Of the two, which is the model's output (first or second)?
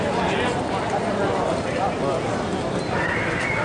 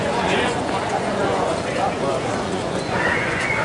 second